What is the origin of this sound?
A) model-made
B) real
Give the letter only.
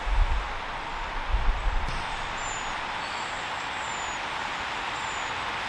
B